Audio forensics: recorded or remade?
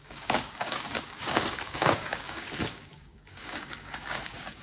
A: remade